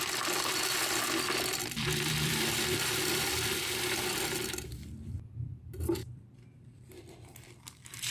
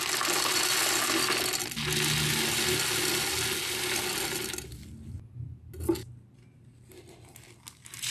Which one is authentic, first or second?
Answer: second